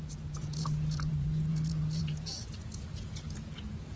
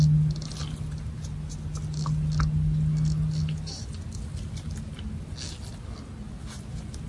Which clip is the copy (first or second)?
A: first